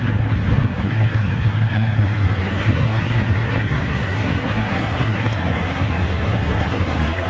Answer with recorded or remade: remade